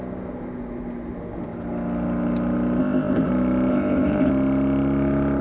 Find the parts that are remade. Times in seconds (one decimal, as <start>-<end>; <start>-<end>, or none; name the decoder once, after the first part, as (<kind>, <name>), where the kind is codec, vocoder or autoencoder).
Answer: 2.8-3.3 (codec, ZipCodec); 3.7-4.3